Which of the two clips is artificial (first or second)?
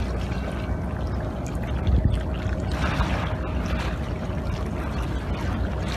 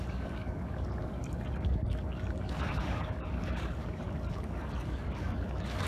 second